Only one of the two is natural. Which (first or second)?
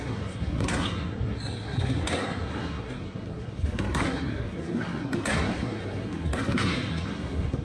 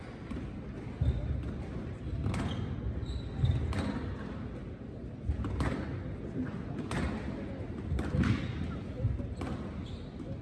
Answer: second